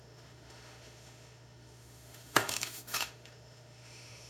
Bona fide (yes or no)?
no